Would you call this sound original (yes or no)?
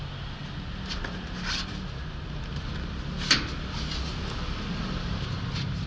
yes